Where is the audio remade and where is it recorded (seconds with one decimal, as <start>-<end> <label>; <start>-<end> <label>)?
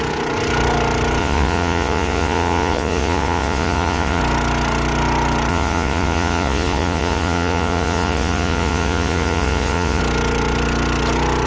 0.0-1.2 recorded; 1.2-4.2 remade; 4.2-5.5 recorded; 5.5-10.0 remade; 10.0-11.5 recorded